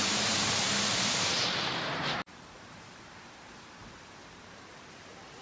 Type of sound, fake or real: fake